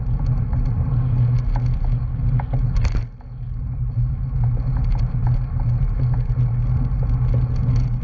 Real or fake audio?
real